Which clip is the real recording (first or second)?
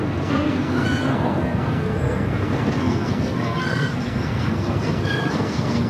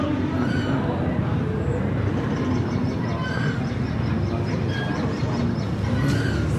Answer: second